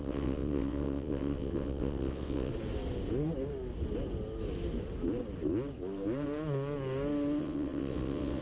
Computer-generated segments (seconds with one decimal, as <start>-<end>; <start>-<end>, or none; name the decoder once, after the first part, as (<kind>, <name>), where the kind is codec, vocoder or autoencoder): 0.0-2.5 (vocoder, WaveNeXt); 7.4-8.4